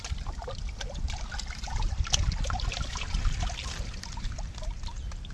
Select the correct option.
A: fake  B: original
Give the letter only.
B